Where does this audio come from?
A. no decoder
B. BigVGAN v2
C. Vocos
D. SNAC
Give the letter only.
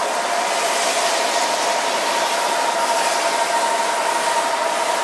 B